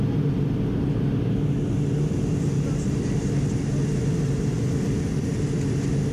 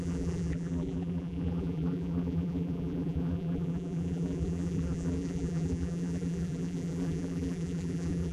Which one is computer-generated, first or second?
second